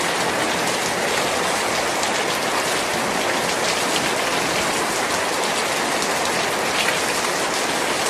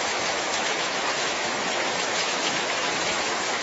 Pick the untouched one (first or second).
first